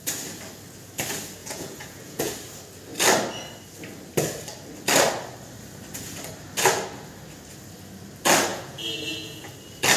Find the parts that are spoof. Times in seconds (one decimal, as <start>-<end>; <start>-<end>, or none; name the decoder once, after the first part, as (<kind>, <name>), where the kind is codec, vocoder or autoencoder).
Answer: 1.4-2.3 (vocoder, Vocos); 8.5-9.5

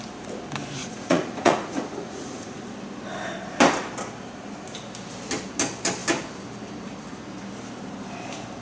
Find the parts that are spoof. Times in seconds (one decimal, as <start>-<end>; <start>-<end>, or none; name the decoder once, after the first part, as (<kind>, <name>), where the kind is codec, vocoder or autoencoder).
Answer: 0.8-2.6 (vocoder, Vocos)

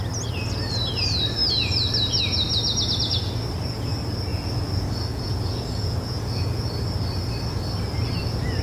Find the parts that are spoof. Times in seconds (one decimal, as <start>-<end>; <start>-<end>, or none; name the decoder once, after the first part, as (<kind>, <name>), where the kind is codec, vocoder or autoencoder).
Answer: 4.3-6.6 (vocoder, Vocos)